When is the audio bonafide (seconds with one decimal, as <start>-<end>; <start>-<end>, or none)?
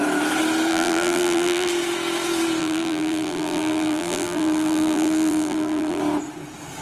0.0-0.7; 1.7-2.6; 6.0-6.8